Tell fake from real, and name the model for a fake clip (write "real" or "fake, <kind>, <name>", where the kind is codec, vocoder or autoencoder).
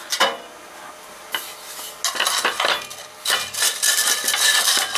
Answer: real